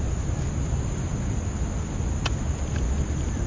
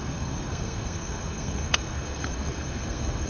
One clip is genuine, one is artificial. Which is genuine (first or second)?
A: first